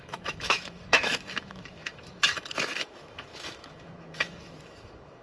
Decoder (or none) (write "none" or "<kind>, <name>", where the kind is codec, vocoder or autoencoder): autoencoder, DAC-VAE